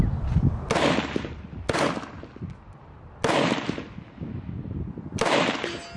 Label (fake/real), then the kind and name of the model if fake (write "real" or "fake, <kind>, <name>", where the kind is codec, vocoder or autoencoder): real